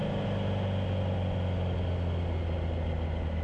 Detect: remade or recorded recorded